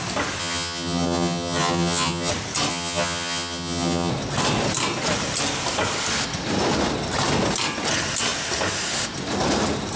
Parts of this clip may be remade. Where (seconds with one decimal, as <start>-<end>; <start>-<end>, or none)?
0.4-2.3; 2.7-4.1